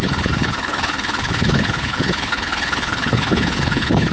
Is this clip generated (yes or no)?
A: yes